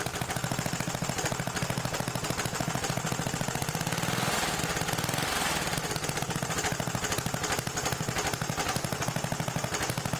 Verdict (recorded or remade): recorded